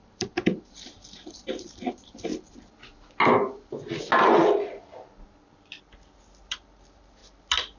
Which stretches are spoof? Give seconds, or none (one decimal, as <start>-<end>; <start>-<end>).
0.0-2.3; 6.5-7.2